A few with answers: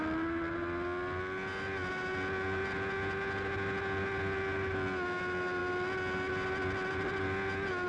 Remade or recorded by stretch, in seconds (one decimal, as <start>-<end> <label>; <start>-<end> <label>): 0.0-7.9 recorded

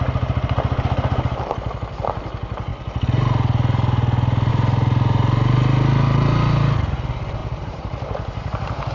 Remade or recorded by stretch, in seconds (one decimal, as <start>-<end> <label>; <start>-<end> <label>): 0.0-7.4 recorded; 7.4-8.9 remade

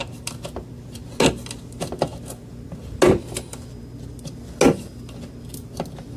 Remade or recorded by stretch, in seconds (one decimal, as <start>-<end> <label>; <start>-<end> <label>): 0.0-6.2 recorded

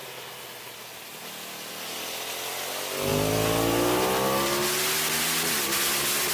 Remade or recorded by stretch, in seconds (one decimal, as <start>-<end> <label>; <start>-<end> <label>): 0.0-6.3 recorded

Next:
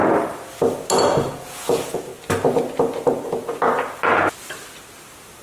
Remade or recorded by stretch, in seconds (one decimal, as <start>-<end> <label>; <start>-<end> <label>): 0.0-1.2 recorded; 1.2-2.1 remade; 2.1-5.4 recorded

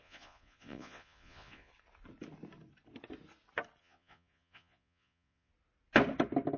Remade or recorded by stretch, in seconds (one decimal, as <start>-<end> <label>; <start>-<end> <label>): 0.0-1.7 remade; 1.7-3.8 recorded; 3.8-5.5 remade; 5.5-6.6 recorded

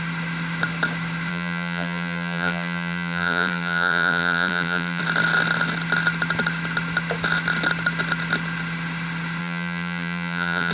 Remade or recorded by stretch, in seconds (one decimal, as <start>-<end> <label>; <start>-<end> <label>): 0.0-1.3 recorded; 1.3-5.0 remade; 5.0-9.4 recorded; 9.4-10.7 remade

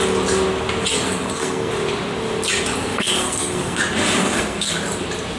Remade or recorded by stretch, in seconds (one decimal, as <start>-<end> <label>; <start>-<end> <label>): 0.0-0.9 recorded; 0.9-1.7 remade; 1.7-2.8 recorded; 2.8-3.8 remade; 3.8-4.2 recorded; 4.2-4.7 remade; 4.7-5.4 recorded